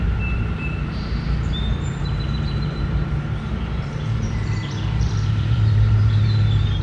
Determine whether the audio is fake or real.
fake